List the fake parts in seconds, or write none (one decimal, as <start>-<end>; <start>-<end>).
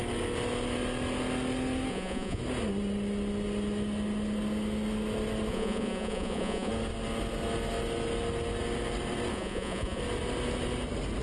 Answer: 1.9-2.4; 5.5-6.7; 9.3-10.0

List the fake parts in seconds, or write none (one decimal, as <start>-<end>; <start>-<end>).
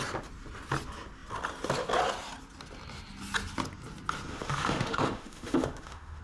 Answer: 4.3-6.2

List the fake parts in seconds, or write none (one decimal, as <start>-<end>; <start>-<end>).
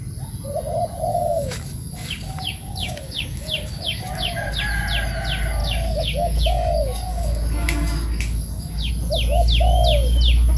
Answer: 1.1-4.6; 5.6-8.9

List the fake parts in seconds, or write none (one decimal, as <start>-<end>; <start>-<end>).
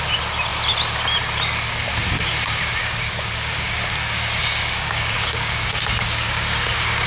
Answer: 2.8-7.1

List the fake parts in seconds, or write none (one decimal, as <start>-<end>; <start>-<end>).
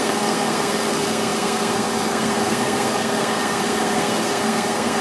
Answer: 0.0-5.0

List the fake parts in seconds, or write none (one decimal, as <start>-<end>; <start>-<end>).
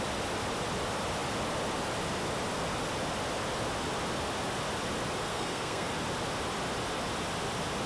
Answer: 5.3-5.9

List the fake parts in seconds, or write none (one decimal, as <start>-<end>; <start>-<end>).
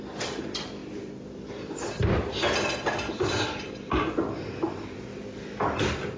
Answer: none